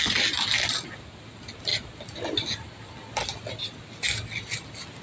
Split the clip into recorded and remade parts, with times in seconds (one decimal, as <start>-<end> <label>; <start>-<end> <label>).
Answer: 0.0-5.0 recorded